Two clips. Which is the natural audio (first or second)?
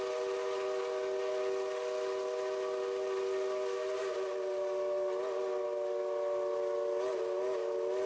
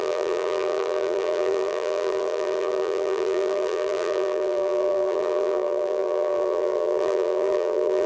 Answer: first